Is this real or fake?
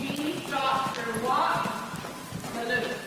real